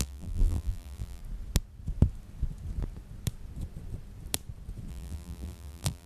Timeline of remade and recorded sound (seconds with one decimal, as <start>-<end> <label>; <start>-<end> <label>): 0.0-1.2 remade; 1.2-4.9 recorded; 4.9-6.1 remade